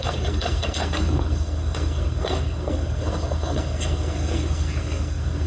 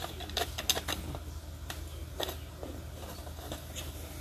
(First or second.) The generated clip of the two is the first